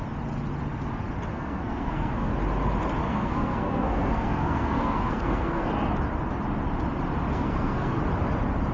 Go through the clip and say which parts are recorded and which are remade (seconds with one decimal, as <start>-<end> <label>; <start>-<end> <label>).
0.0-1.3 recorded; 1.3-2.3 remade; 2.3-3.0 recorded; 3.0-5.7 remade; 5.7-7.3 recorded; 7.3-8.0 remade; 8.0-8.7 recorded